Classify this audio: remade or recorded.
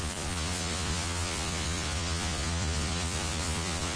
remade